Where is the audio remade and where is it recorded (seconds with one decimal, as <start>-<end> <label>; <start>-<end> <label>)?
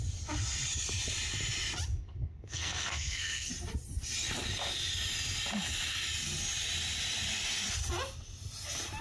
0.0-1.9 recorded; 1.9-3.5 remade; 3.5-9.0 recorded